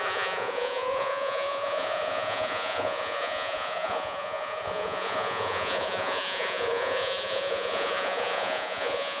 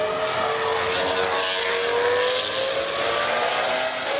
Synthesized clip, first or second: first